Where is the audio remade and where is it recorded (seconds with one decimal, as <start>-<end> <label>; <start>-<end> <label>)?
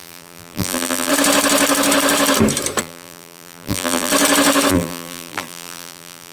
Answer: 0.0-1.1 remade; 1.1-2.8 recorded; 2.8-4.1 remade; 4.1-4.7 recorded; 4.7-6.3 remade